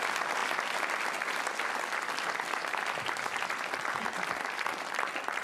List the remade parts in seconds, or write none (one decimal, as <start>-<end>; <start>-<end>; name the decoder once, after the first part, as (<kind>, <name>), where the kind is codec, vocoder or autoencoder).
none